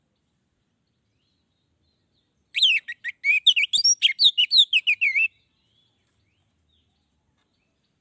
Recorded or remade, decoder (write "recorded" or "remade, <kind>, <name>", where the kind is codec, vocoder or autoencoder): recorded